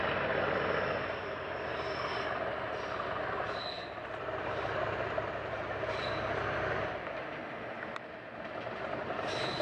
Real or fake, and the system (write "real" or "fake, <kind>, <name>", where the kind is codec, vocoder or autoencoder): real